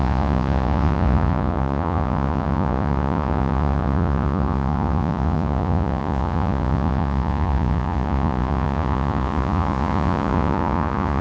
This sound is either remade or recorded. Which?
remade